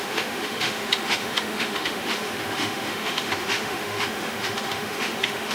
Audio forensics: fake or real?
fake